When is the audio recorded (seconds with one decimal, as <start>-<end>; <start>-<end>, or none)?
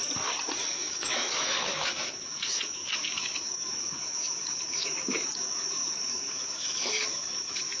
0.0-0.7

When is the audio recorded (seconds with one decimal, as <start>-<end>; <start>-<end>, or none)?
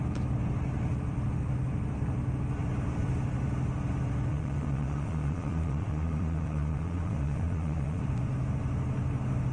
0.0-4.3; 8.0-9.5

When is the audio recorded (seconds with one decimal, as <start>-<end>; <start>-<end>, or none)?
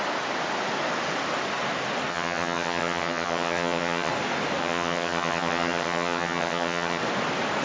0.0-2.1; 4.1-4.6; 7.0-7.6